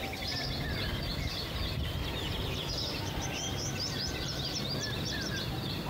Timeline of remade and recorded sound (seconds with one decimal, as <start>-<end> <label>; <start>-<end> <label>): 0.0-1.1 recorded; 1.1-4.6 remade; 4.6-5.9 recorded